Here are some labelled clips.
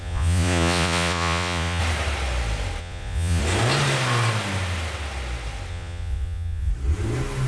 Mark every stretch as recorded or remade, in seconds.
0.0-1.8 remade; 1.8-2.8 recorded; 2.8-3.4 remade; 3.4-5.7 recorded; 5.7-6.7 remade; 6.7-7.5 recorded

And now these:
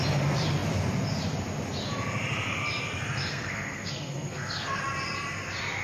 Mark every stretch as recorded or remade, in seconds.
0.0-3.3 recorded; 3.3-4.8 remade; 4.8-5.8 recorded

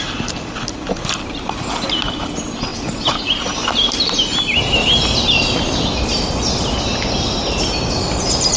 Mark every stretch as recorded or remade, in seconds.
0.0-8.6 recorded

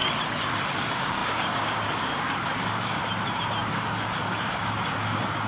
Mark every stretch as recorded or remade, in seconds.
0.0-0.7 recorded; 0.7-3.0 remade; 3.0-3.6 recorded; 3.6-5.5 remade

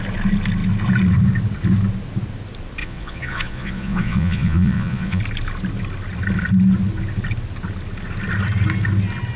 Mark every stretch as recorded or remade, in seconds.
0.0-2.8 recorded; 2.8-5.2 remade; 5.2-9.4 recorded

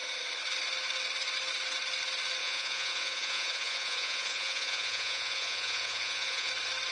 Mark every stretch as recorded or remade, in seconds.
0.0-2.4 recorded; 2.4-6.5 remade; 6.5-6.9 recorded

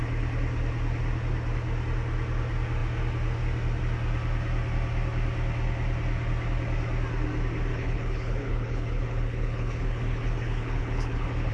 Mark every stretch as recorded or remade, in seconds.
0.0-7.7 recorded; 7.7-11.5 remade